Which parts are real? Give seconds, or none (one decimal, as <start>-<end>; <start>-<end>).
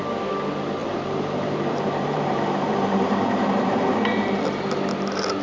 0.0-0.8; 3.9-5.4